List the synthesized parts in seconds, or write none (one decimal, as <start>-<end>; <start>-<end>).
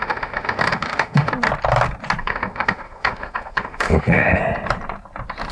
0.0-1.3; 2.2-4.4